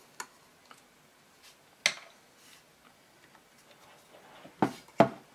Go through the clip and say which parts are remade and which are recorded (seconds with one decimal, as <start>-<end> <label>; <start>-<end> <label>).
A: 0.0-5.3 recorded